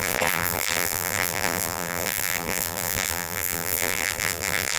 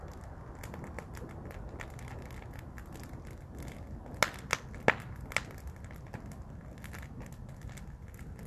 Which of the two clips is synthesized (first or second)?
first